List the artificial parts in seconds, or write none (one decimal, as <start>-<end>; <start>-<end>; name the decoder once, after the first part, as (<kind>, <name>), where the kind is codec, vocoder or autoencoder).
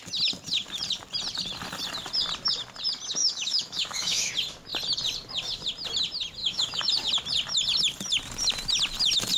3.2-4.3 (autoencoder, DAC-VAE); 6.4-6.9